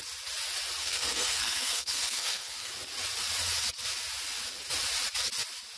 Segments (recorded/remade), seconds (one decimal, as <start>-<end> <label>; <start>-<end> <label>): 0.0-0.8 recorded; 0.8-2.7 remade; 2.7-5.8 recorded